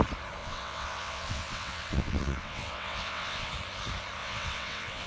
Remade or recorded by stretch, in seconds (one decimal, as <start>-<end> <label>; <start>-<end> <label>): 0.0-0.4 recorded; 0.4-3.5 remade; 3.5-4.2 recorded; 4.2-5.1 remade